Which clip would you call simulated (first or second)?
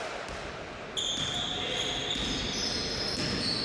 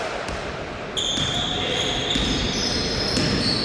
second